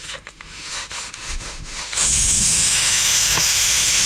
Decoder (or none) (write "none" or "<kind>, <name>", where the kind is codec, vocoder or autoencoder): autoencoder, DAC-VAE